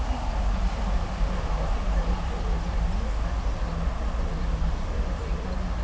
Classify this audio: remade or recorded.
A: recorded